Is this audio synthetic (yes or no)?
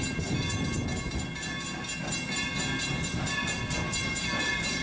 no